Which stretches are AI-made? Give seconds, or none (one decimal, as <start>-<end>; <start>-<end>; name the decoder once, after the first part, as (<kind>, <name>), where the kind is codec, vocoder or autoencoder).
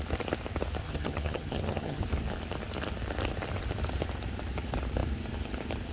0.8-2.0 (vocoder, HiFi-GAN)